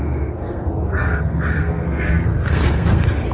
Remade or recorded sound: remade